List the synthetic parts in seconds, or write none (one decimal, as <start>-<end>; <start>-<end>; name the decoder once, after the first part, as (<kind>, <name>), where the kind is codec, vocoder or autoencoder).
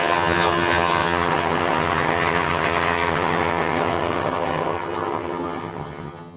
0.0-6.4 (vocoder, HiFi-GAN)